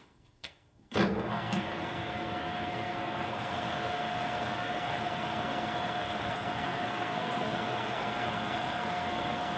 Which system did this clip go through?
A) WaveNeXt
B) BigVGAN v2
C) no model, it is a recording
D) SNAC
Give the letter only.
D